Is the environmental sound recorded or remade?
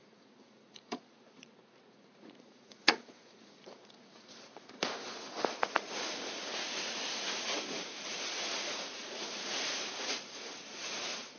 remade